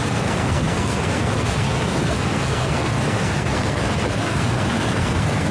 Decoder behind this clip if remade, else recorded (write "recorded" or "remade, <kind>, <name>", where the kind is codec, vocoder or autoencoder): remade, codec, SNAC